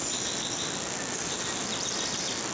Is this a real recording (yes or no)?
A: yes